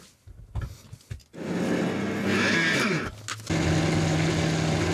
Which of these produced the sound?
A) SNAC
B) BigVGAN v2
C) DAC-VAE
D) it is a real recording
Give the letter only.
D